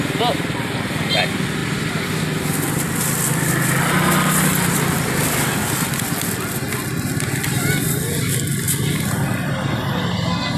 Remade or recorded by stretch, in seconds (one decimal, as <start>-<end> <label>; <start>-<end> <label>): 0.0-10.6 recorded